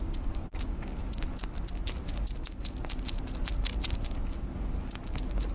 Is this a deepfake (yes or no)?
no